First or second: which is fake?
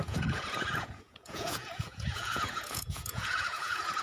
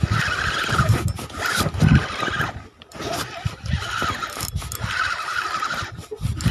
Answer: first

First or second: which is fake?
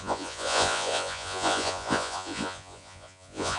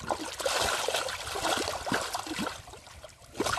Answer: first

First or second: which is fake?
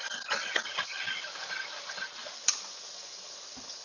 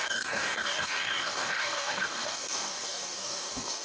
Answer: second